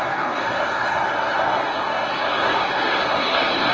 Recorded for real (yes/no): no